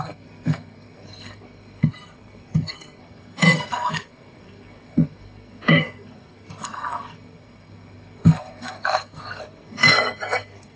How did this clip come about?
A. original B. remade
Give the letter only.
B